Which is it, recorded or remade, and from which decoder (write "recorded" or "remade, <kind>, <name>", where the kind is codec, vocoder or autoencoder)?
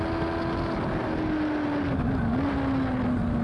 recorded